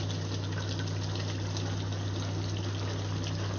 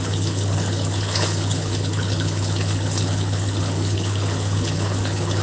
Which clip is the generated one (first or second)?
second